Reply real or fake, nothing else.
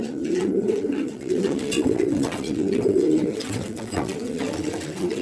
fake